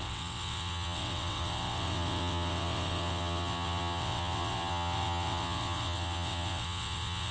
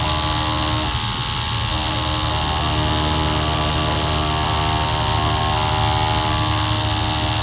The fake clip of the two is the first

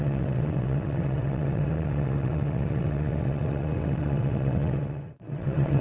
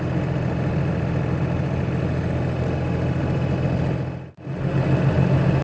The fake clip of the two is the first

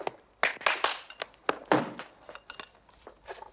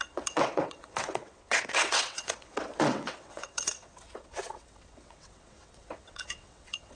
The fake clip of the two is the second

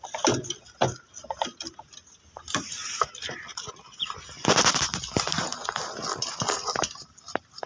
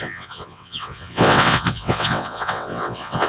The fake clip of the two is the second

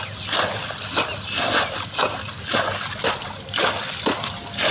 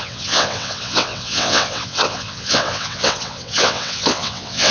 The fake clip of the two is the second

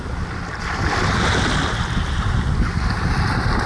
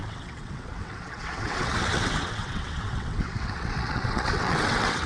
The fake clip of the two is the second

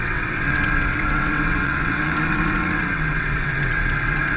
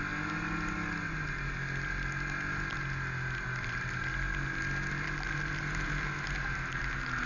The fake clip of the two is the first